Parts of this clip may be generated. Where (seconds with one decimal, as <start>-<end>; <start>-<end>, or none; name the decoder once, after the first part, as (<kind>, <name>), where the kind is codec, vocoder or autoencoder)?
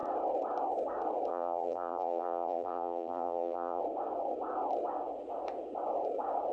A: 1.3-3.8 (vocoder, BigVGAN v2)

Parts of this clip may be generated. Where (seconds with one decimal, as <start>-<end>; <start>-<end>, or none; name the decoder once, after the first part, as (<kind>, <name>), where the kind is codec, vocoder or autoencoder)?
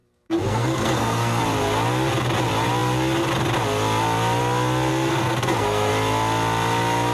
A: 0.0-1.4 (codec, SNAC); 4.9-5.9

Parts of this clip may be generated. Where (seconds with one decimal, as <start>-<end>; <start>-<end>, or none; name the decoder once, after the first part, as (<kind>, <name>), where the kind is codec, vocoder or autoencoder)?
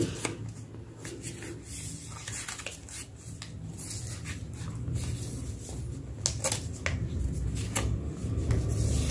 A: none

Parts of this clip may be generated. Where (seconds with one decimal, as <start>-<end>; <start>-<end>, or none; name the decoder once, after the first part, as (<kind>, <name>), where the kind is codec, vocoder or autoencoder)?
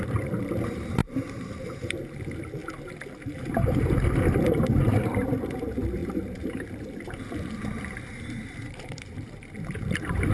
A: 0.0-2.6 (vocoder, BigVGAN v2); 5.4-10.3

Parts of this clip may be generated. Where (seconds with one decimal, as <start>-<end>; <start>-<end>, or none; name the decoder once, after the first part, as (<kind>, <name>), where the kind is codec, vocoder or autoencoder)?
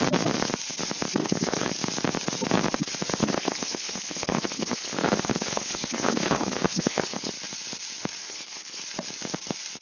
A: 1.2-1.7 (codec, HILCodec); 3.2-7.3; 8.2-8.8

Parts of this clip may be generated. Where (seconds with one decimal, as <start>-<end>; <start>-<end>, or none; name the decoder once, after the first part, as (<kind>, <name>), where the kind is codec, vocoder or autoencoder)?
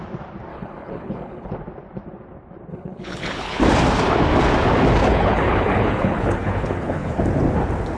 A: 0.5-1.5 (codec, HILCodec); 2.7-3.6; 5.0-7.2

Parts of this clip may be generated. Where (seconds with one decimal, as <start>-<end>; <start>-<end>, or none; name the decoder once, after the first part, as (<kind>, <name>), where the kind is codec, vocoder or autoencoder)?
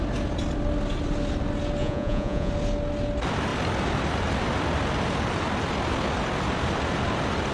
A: 1.8-2.5 (vocoder, Vocos)